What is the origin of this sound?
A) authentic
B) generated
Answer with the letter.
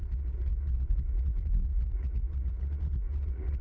B